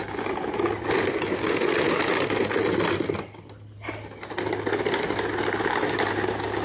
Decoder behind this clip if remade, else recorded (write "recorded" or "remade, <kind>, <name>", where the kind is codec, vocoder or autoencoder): recorded